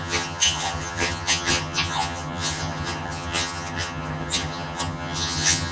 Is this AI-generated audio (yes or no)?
yes